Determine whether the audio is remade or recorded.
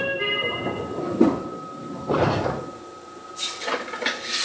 remade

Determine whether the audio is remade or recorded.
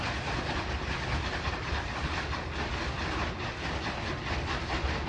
recorded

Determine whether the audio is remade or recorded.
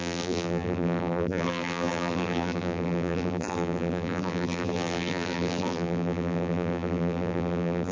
remade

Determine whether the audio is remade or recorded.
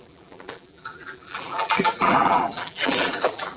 remade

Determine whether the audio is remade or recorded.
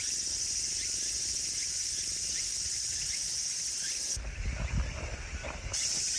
recorded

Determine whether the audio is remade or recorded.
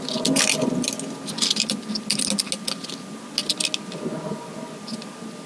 recorded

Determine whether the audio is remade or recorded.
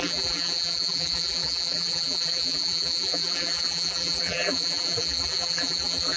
remade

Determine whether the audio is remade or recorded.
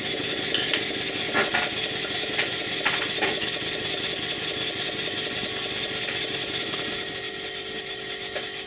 recorded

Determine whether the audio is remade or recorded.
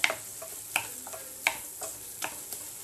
recorded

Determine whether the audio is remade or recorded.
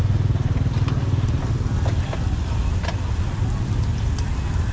recorded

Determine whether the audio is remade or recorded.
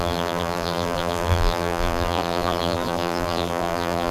remade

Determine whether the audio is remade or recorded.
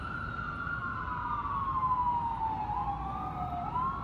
recorded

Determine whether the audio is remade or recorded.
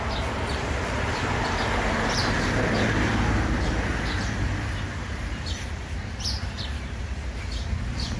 remade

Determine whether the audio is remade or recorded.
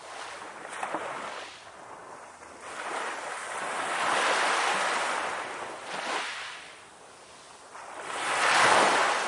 recorded